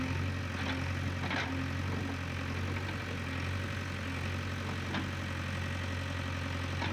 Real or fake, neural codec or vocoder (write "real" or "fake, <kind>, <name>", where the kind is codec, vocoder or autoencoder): real